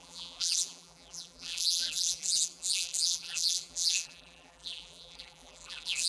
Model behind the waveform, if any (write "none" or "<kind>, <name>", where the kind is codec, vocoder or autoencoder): vocoder, BigVGAN v2